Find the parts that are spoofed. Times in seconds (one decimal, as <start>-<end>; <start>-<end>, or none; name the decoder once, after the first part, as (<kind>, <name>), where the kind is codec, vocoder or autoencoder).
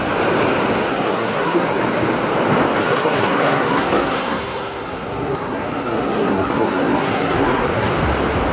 0.9-1.8 (codec, SNAC); 2.8-7.9